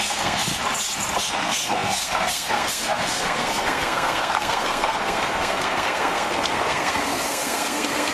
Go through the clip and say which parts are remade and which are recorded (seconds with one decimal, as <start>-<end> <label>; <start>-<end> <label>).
0.0-0.5 remade; 0.5-1.3 recorded; 1.3-8.1 remade